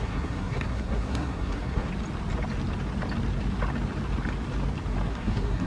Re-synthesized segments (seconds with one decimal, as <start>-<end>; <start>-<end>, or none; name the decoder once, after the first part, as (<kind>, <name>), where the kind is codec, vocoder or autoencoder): 0.0-1.9 (codec, SNAC); 5.1-5.7